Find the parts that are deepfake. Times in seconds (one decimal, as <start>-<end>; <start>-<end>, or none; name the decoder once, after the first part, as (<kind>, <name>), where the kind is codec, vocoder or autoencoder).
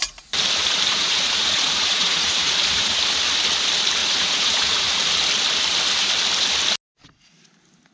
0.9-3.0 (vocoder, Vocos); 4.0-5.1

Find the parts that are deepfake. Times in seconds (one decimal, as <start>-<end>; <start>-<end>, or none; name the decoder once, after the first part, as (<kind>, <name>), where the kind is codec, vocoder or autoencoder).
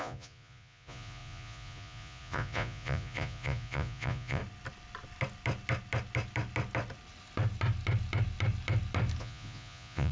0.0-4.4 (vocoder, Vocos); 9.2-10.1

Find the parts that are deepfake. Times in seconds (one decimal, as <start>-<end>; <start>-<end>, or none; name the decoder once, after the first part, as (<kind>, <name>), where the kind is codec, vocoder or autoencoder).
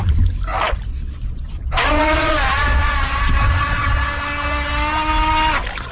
0.9-4.1 (vocoder, Vocos)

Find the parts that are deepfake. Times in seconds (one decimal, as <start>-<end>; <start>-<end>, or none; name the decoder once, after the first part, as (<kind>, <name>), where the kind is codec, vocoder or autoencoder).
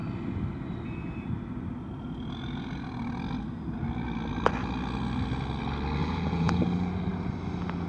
6.0-6.6 (vocoder, Vocos)